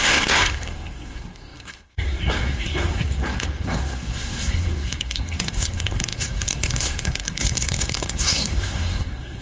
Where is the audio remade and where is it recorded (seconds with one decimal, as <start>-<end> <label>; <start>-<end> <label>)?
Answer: 0.0-9.4 remade